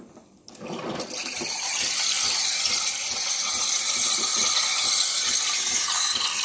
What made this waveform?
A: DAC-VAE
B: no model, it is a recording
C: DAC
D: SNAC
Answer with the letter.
B